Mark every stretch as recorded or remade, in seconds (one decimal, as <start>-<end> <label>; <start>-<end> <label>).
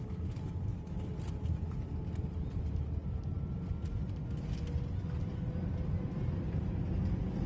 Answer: 0.0-0.7 recorded; 0.7-1.5 remade; 1.5-7.5 recorded